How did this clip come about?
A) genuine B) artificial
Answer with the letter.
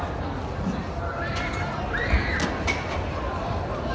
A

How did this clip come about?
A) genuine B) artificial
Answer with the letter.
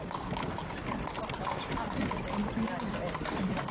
A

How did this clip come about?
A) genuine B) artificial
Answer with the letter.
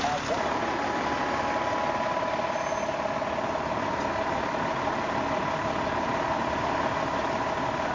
A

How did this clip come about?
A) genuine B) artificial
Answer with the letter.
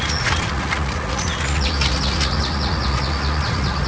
B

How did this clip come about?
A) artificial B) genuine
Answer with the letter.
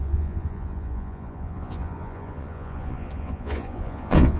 A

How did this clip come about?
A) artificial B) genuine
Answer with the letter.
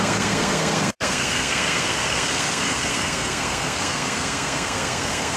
A